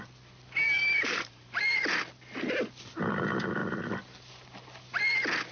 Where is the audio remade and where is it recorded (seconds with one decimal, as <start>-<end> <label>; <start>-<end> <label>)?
0.0-0.6 recorded; 0.6-1.8 remade; 1.8-5.5 recorded